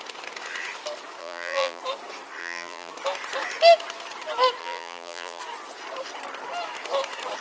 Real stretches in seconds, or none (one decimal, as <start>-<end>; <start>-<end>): 0.0-1.2; 1.8-2.4; 2.9-4.6; 5.4-7.4